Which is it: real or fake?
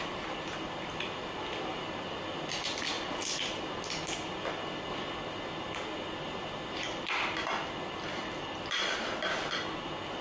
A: real